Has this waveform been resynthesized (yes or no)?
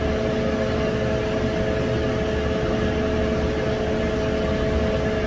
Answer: no